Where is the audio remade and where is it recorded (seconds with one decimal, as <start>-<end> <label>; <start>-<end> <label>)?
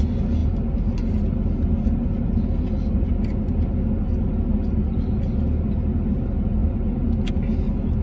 0.0-8.0 recorded